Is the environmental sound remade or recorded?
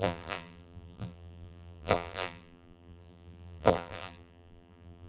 remade